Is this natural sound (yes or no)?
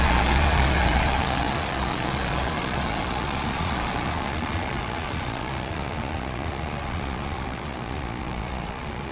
no